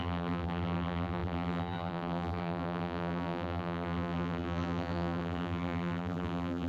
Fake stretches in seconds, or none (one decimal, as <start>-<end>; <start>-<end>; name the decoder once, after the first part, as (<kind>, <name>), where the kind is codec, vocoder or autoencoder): 0.0-6.7 (vocoder, BigVGAN v2)